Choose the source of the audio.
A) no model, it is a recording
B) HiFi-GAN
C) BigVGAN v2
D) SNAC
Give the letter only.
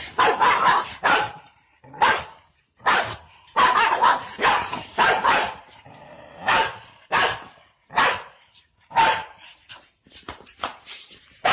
C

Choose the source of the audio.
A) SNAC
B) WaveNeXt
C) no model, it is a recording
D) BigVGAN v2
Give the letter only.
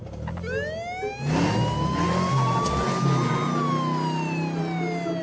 C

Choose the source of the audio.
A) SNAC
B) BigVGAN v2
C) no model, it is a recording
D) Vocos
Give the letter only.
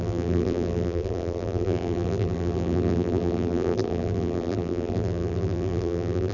B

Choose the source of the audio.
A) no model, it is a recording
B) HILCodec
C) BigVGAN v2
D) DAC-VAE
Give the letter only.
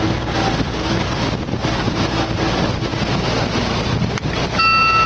A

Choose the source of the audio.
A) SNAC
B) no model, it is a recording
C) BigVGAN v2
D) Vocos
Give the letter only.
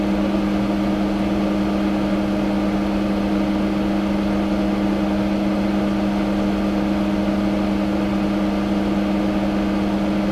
B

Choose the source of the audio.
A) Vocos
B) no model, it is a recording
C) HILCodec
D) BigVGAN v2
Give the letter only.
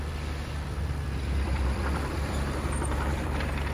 D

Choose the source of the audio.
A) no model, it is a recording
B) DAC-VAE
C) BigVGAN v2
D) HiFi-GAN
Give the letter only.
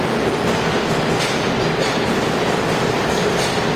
A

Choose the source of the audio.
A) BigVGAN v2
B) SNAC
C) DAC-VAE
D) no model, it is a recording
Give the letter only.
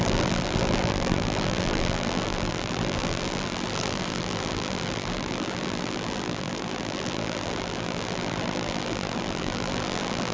A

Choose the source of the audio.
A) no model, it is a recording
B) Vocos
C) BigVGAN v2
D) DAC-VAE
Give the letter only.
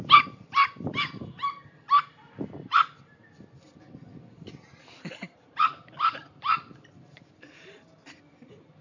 C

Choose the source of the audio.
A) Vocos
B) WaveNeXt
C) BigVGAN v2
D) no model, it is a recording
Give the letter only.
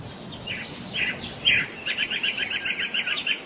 D